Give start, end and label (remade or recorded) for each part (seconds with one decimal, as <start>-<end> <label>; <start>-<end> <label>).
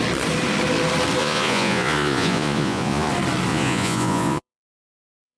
0.0-1.2 recorded; 1.2-3.1 remade; 3.1-3.5 recorded; 3.5-5.4 remade